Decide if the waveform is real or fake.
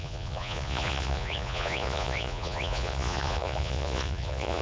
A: fake